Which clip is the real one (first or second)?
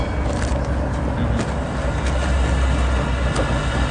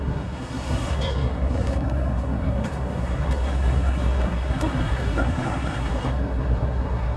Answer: first